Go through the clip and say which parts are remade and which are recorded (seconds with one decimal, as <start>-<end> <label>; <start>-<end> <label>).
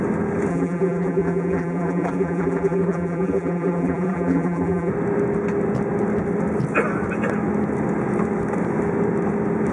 0.0-0.5 recorded; 0.5-4.9 remade; 4.9-9.7 recorded